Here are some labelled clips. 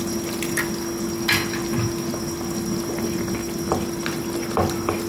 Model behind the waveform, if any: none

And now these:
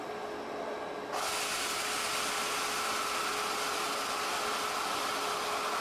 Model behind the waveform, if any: none